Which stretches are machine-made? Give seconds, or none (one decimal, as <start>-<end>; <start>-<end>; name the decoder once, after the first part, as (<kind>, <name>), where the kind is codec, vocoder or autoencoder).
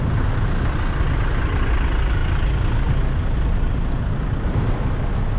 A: none